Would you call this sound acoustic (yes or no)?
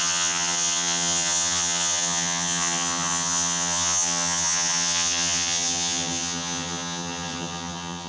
no